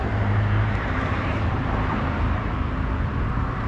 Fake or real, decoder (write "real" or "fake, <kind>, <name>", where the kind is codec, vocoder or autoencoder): fake, vocoder, BigVGAN v2